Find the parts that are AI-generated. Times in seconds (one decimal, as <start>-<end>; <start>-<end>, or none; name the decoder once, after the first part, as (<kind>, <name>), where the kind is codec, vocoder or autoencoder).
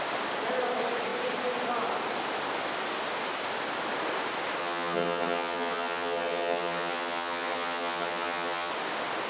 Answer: 4.6-8.7 (vocoder, HiFi-GAN)